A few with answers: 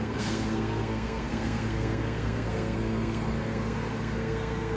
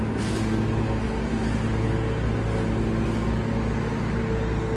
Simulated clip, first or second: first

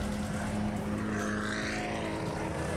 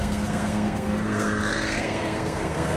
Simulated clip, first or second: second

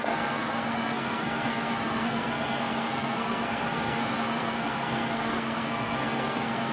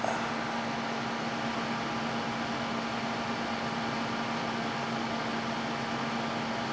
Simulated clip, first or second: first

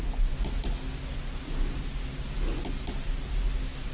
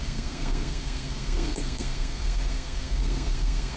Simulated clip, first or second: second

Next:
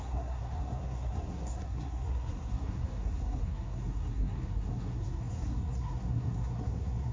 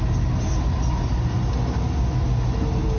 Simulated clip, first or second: first